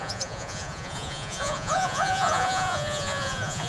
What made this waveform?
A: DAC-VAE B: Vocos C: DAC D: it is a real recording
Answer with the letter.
B